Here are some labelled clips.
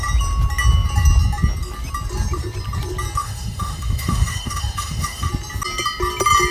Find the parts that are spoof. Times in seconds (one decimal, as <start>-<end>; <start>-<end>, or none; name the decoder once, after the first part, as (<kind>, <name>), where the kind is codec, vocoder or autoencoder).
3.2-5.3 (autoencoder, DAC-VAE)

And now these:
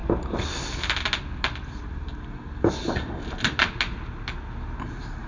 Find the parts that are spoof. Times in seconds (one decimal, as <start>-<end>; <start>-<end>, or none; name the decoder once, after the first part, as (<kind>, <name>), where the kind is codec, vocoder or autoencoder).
none

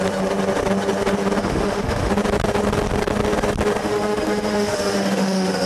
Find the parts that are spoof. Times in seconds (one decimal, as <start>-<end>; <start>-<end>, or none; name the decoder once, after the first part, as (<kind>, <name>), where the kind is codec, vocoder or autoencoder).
1.4-2.1 (autoencoder, DAC-VAE); 3.8-5.7

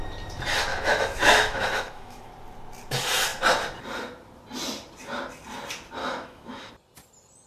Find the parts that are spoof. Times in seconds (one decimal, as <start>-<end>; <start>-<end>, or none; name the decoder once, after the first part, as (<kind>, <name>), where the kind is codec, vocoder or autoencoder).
0.7-2.3 (autoencoder, DAC-VAE); 6.0-6.7

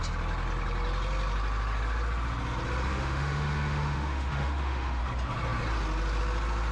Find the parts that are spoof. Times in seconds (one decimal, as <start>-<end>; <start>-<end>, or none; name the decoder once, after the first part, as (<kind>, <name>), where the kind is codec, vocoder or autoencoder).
2.9-5.0 (autoencoder, DAC-VAE)